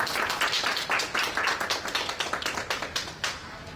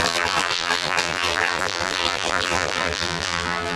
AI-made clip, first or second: second